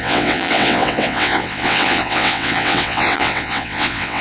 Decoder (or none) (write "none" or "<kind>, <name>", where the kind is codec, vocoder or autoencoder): vocoder, WaveNeXt